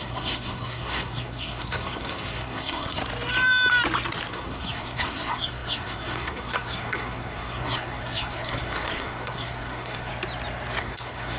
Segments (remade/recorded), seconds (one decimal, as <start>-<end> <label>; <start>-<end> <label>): 0.0-3.0 remade; 3.0-4.3 recorded; 4.3-10.1 remade; 10.1-10.8 recorded; 10.8-11.4 remade

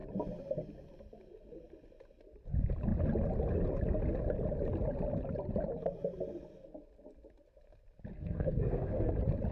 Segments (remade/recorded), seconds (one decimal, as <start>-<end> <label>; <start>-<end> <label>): 0.0-8.1 recorded; 8.1-9.1 remade; 9.1-9.5 recorded

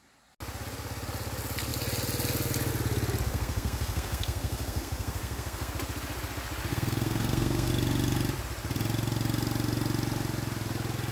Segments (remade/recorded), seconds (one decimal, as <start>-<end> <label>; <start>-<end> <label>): 0.0-3.3 recorded; 3.3-5.7 remade; 5.7-6.7 recorded; 6.7-7.7 remade; 7.7-11.1 recorded

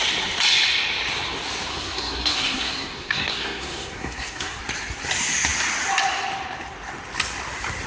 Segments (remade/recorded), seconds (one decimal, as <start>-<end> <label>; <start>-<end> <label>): 0.0-1.7 recorded; 1.7-4.6 remade; 4.6-7.9 recorded